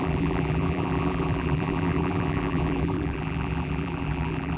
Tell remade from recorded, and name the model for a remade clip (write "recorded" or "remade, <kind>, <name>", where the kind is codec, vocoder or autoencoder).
remade, vocoder, BigVGAN v2